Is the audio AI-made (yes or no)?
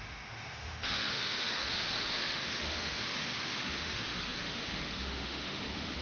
yes